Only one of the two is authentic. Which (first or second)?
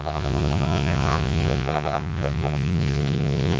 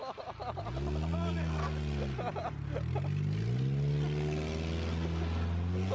second